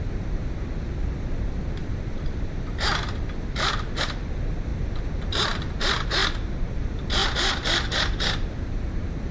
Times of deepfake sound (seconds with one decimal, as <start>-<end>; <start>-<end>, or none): 1.8-3.7